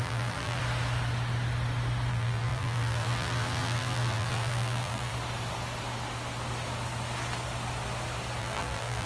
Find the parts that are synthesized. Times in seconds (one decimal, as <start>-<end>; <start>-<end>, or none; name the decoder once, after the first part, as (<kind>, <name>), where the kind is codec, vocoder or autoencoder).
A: 0.0-0.6 (vocoder, BigVGAN v2); 2.1-5.1; 8.4-9.1